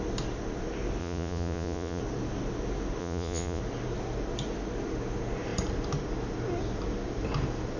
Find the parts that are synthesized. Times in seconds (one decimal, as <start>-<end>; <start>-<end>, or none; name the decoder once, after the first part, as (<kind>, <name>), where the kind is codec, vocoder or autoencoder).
1.0-2.0 (vocoder, Vocos); 3.0-3.6

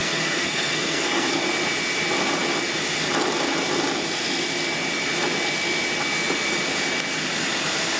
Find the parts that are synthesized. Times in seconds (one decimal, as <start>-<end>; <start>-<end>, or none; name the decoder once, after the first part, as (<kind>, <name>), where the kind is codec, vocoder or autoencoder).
0.0-1.4 (codec, SNAC)

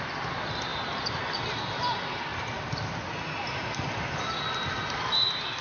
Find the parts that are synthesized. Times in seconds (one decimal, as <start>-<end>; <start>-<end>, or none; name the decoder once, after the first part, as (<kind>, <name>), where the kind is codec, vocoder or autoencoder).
none

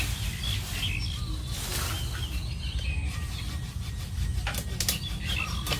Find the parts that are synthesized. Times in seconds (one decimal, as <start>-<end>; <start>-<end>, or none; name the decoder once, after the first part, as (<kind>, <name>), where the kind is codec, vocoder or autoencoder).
none

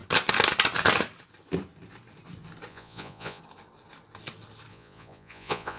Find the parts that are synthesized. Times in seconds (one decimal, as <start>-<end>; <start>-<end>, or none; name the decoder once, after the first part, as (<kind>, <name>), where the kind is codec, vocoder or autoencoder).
2.7-3.4 (vocoder, Vocos); 4.7-5.8

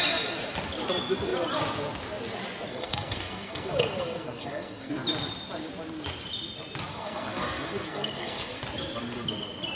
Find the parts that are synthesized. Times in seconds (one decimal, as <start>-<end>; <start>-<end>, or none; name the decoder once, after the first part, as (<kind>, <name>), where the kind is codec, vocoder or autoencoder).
2.7-4.9 (codec, SNAC); 6.9-8.6

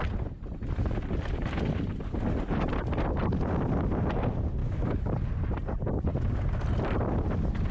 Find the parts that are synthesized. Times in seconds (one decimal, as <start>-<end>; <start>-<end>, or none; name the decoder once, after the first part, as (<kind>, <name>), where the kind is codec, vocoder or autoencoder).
4.6-5.1 (autoencoder, DAC-VAE)

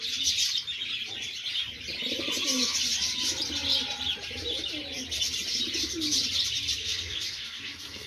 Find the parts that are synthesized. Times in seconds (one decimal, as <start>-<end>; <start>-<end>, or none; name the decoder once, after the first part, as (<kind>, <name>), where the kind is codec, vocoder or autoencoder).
6.8-8.1 (codec, SNAC)